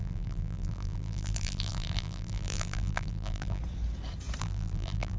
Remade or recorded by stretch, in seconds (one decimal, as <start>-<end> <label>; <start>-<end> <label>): 0.0-3.6 remade; 3.6-4.4 recorded; 4.4-5.2 remade